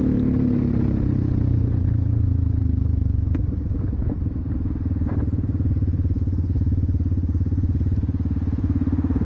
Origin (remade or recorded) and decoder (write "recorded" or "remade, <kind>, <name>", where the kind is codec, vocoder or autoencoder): remade, vocoder, BigVGAN v2